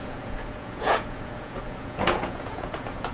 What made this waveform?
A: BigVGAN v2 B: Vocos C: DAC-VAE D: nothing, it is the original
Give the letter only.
B